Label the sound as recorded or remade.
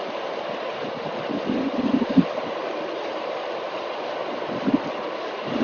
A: remade